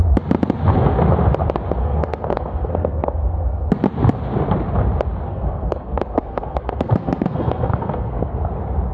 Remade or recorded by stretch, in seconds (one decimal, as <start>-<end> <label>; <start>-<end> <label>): 0.0-1.8 recorded; 1.8-3.7 remade; 3.7-5.3 recorded; 5.3-8.5 remade; 8.5-8.9 recorded